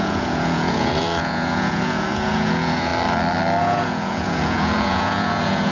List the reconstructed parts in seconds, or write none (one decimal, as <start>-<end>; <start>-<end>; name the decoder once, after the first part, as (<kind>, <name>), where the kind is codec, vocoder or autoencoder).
0.0-2.9 (vocoder, Vocos); 3.6-5.7